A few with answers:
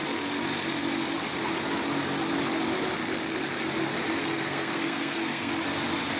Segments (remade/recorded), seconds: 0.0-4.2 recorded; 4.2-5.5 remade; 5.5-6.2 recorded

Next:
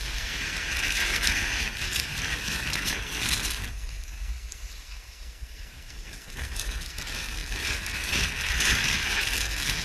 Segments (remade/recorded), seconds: 0.0-9.8 remade